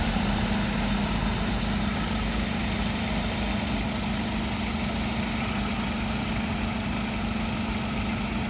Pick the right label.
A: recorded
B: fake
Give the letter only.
A